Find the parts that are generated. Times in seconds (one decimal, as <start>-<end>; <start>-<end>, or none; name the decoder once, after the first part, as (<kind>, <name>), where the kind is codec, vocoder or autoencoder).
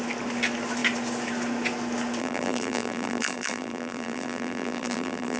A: 2.2-5.4 (vocoder, BigVGAN v2)